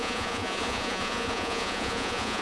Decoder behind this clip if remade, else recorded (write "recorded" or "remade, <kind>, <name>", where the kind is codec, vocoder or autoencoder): remade, vocoder, Vocos